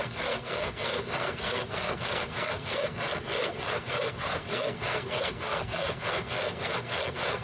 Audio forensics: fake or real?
fake